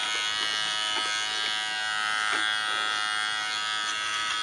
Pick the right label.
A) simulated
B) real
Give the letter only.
B